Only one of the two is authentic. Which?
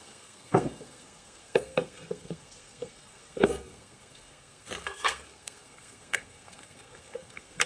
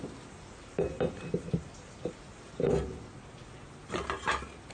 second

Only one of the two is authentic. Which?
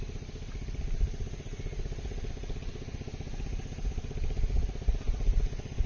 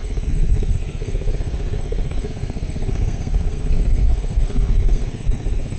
first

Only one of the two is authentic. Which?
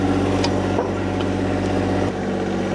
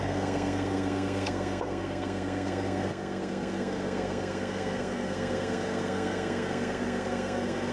first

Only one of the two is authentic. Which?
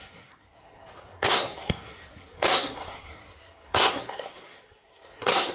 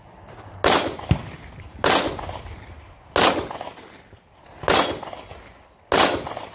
second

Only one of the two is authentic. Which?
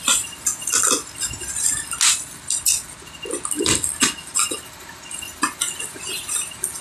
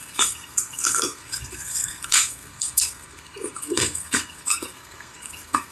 first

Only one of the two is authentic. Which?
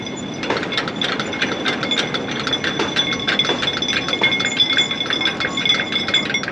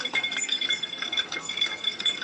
first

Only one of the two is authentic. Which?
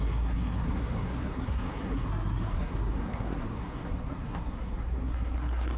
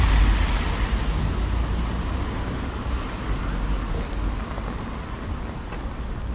second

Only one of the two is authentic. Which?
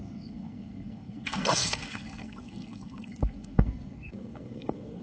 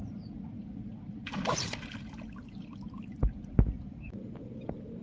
second